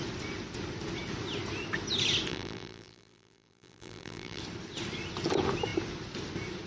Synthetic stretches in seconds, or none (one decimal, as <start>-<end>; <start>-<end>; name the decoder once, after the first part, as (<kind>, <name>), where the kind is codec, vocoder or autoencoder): 2.3-4.4 (vocoder, BigVGAN v2)